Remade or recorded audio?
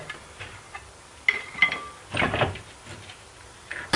recorded